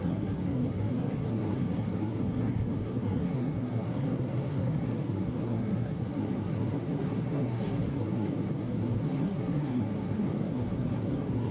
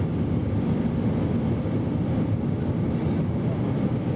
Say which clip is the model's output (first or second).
first